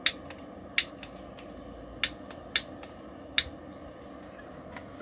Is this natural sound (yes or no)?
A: yes